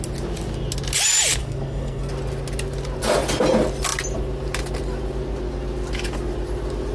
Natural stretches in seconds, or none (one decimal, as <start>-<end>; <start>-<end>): 0.0-1.4; 2.1-6.9